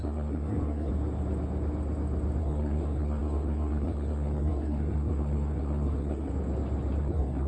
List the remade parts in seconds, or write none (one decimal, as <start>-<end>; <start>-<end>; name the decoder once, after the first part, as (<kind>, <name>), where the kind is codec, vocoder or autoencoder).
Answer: 0.0-0.9 (codec, SNAC); 2.4-6.3; 7.0-7.5